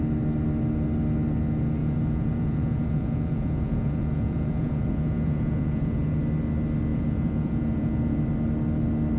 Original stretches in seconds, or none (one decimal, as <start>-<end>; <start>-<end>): 0.0-1.8; 6.2-6.9; 8.2-9.2